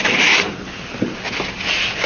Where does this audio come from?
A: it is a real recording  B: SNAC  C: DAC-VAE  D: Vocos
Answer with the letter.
A